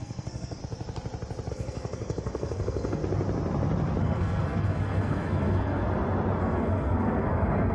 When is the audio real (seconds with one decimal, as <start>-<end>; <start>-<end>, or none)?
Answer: 0.6-1.5; 3.0-4.0; 5.8-6.4